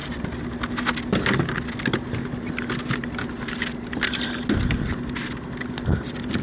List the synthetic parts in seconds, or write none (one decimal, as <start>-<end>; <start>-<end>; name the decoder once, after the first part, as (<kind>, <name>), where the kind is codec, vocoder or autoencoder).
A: none